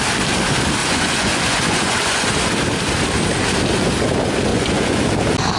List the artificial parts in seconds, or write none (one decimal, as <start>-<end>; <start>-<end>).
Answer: 0.8-2.3; 4.5-5.0